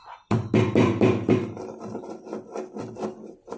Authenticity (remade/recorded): recorded